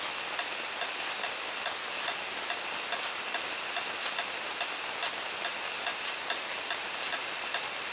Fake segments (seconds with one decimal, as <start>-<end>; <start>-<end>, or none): 5.9-6.5